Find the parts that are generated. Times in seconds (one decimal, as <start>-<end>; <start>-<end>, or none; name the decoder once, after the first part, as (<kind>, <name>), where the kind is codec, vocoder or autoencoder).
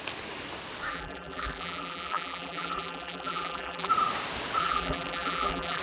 0.9-3.9 (vocoder, BigVGAN v2); 4.6-5.8